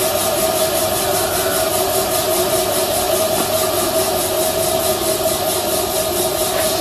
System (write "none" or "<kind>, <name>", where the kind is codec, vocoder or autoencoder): none